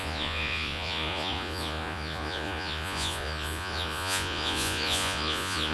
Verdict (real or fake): fake